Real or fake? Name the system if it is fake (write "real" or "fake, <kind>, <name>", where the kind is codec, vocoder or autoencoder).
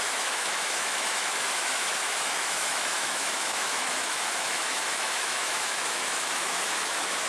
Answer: fake, autoencoder, DAC-VAE